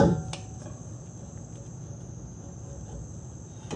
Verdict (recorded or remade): recorded